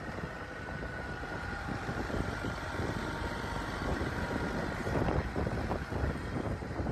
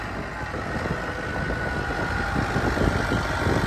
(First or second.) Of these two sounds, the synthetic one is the first